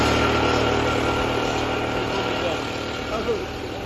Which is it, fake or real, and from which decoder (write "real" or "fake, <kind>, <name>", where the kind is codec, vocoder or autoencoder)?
real